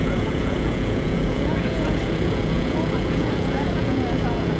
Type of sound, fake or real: fake